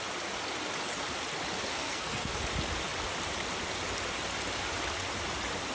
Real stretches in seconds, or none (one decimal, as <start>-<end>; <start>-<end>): 0.0-1.7; 2.3-5.7